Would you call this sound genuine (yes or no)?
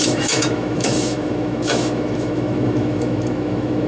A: no